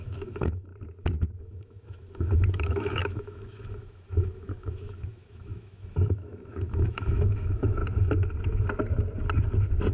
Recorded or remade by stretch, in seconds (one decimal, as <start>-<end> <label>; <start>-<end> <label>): 0.0-0.7 remade; 0.7-1.4 recorded; 1.4-7.8 remade; 7.8-9.9 recorded